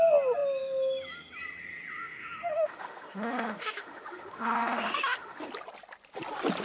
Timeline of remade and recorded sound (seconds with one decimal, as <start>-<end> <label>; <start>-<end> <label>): 0.0-1.9 recorded; 1.9-5.5 remade; 5.5-6.6 recorded